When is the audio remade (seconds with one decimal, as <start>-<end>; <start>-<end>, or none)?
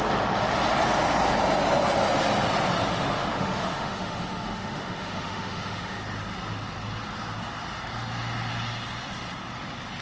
2.9-6.0